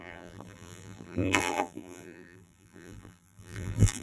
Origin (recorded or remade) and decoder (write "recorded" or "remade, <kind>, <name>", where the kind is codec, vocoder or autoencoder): remade, vocoder, BigVGAN v2